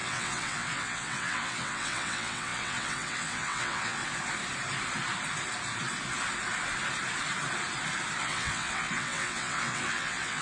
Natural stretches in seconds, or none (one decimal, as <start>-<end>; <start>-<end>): 4.0-8.2